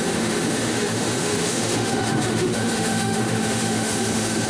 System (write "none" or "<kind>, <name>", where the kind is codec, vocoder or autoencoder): autoencoder, DAC-VAE